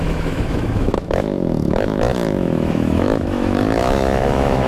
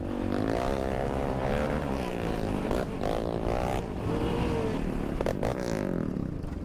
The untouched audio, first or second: second